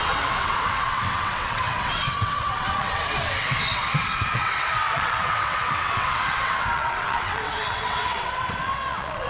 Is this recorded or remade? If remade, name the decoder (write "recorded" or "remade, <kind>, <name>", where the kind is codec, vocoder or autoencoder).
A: remade, vocoder, WaveNeXt